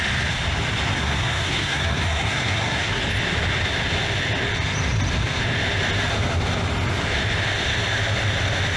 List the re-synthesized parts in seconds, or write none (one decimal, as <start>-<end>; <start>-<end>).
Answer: 0.9-3.0